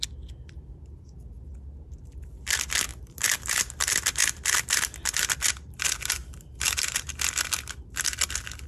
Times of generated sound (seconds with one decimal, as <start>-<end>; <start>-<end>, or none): 2.9-3.6; 6.2-7.1